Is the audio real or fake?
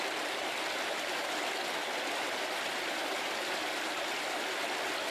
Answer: real